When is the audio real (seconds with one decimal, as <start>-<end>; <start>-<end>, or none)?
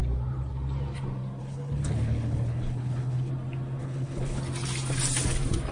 0.0-1.4; 3.3-3.8; 4.4-5.7